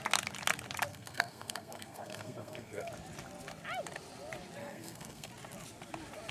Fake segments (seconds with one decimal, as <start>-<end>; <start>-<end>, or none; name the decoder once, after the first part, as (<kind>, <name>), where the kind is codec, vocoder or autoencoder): 0.9-2.9 (codec, SNAC); 4.6-5.3